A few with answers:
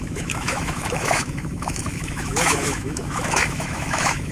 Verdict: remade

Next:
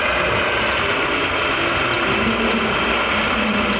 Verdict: recorded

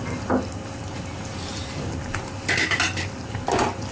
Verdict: recorded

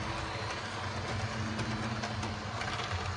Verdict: recorded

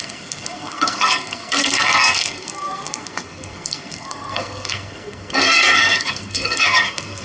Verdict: remade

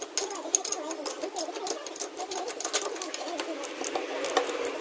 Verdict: recorded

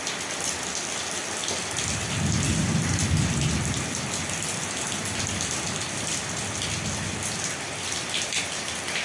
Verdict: remade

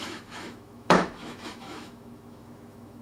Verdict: remade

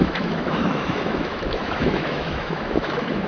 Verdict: remade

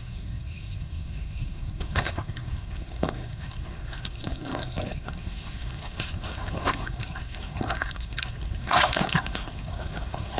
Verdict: remade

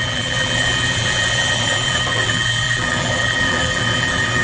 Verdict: remade